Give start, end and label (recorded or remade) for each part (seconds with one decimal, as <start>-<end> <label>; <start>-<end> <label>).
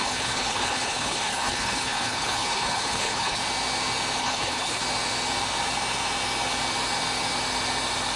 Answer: 0.0-3.4 remade; 3.4-4.2 recorded; 4.2-4.8 remade; 4.8-8.2 recorded